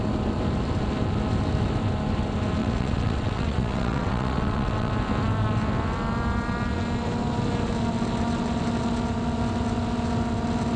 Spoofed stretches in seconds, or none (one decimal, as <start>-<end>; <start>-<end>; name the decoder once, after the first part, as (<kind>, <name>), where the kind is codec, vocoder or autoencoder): 2.6-4.9 (vocoder, WaveNeXt)